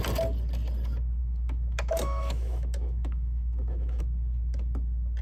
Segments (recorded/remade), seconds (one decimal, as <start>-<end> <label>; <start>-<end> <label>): 0.0-1.2 recorded; 1.2-4.0 remade; 4.0-5.2 recorded